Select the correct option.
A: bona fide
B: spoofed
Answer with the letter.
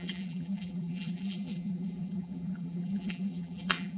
B